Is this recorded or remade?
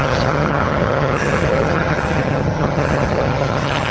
remade